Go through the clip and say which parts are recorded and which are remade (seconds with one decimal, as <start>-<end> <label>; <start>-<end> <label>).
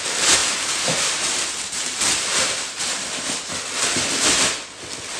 0.0-0.4 recorded; 0.4-3.5 remade; 3.5-5.2 recorded